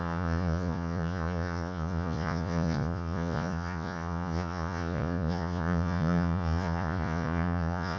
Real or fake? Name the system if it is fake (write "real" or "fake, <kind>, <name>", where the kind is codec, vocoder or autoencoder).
fake, vocoder, Vocos